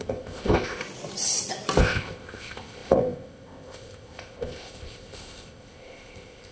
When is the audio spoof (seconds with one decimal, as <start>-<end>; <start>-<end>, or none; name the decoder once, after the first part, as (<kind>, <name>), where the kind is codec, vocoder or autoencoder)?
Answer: 0.0-0.8 (codec, ZipCodec); 1.8-6.5